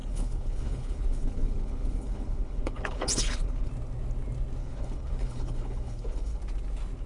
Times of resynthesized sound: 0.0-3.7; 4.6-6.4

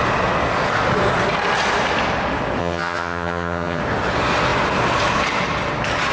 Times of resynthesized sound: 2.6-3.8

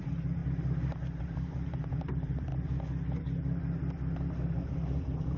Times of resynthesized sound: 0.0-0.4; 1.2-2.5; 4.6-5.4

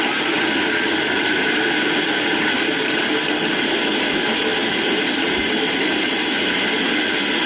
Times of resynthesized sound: none

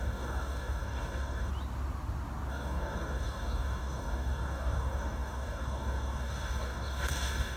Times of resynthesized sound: 0.0-1.5; 2.5-7.6

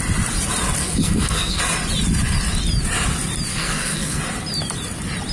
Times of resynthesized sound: 0.8-1.6; 3.5-4.2

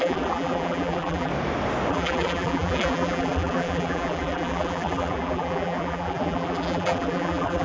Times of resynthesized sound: 0.0-1.3; 1.9-7.6